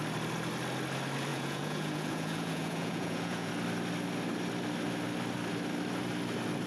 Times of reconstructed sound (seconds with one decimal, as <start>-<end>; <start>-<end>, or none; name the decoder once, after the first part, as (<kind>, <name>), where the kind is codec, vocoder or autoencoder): 1.3-3.5 (vocoder, Vocos)